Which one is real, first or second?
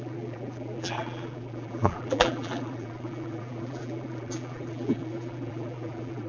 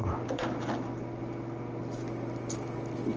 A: second